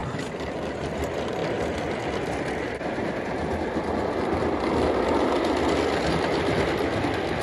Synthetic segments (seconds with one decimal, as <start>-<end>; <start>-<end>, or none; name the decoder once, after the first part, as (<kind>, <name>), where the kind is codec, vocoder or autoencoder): none